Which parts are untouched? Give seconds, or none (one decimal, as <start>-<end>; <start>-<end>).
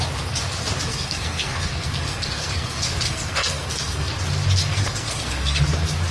0.0-0.9; 4.1-4.6; 5.6-6.1